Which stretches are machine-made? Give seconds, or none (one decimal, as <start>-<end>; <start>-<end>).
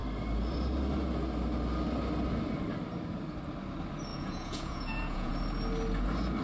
4.1-5.3